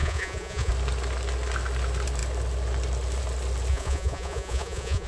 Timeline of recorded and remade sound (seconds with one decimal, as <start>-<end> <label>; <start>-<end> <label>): 0.0-0.7 remade; 0.7-3.7 recorded; 3.7-5.1 remade